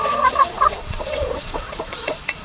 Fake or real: fake